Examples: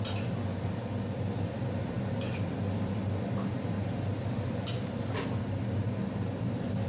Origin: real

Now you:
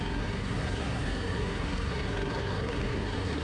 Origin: fake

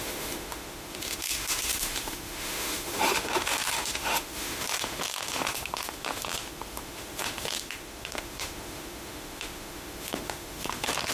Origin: fake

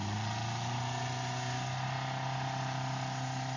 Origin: real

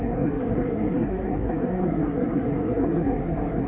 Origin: fake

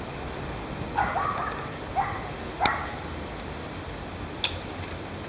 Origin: real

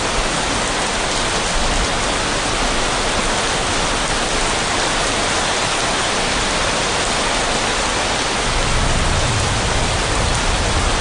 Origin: real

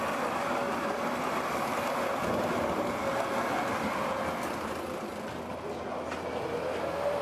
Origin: real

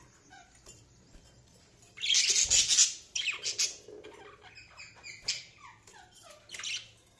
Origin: real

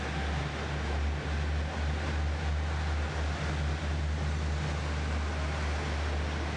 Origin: real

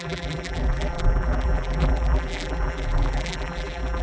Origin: fake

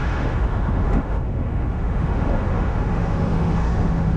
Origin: fake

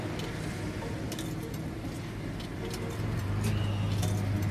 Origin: real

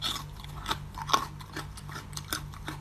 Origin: real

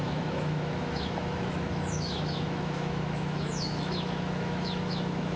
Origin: fake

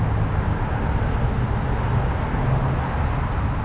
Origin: real